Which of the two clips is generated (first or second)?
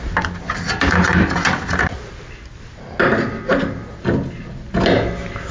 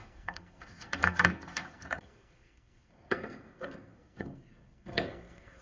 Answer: second